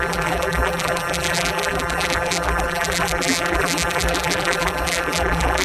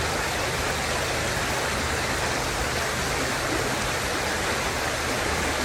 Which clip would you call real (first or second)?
second